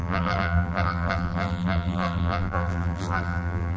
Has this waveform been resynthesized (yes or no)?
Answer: yes